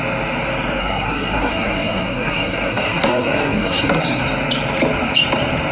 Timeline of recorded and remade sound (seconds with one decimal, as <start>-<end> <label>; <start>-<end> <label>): 0.0-0.8 recorded; 0.8-4.2 remade; 4.2-5.7 recorded